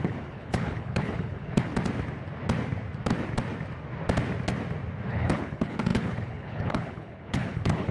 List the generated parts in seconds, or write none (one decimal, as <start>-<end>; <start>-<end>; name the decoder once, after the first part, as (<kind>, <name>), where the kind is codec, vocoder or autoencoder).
0.0-1.7 (codec, HILCodec); 5.1-7.9